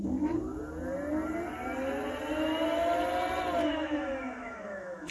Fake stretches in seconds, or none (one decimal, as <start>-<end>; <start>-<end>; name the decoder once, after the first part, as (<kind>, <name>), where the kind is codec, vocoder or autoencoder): 3.6-5.1 (autoencoder, DAC-VAE)